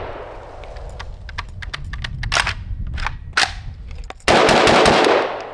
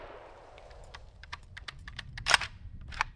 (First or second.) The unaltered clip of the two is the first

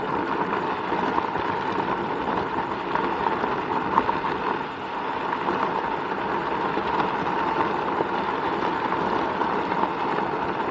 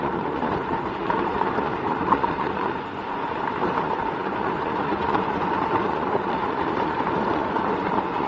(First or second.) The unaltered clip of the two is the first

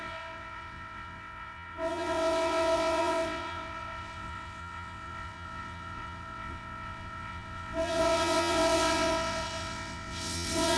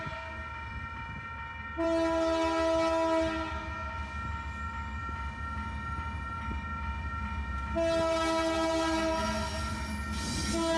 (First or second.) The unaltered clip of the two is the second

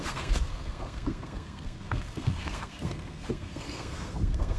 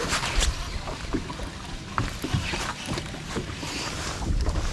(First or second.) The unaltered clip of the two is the second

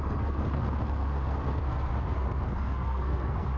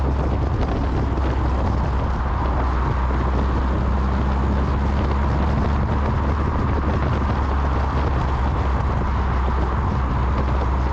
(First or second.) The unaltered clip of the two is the second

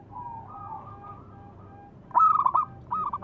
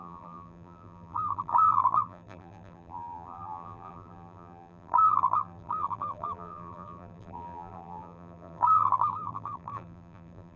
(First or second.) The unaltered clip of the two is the first